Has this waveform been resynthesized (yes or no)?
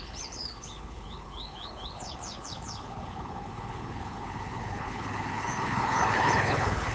yes